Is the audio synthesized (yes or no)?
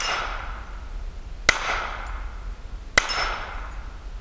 no